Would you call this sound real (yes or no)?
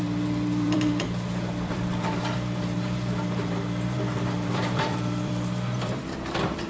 no